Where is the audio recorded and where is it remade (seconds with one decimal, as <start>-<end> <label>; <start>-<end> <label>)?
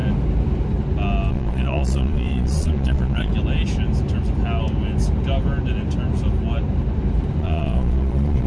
0.0-1.3 recorded; 1.3-3.3 remade; 3.3-7.4 recorded; 7.4-8.5 remade